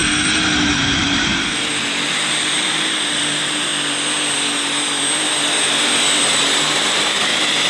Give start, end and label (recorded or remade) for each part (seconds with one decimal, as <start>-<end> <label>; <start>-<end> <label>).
0.0-0.7 recorded; 0.7-1.3 remade; 1.3-2.1 recorded; 2.1-3.7 remade; 3.7-6.6 recorded; 6.6-7.7 remade